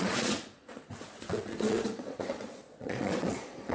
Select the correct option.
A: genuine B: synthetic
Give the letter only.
B